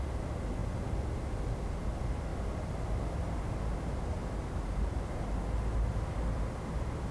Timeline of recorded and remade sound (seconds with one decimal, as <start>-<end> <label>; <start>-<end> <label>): 0.0-7.1 recorded